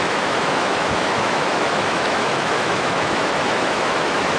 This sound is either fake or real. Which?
fake